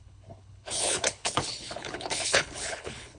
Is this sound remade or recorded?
remade